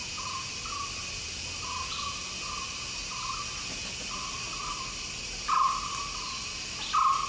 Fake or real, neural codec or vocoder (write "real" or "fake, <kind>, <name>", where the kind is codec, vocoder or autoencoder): real